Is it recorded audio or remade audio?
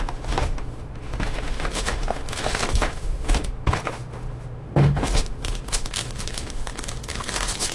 remade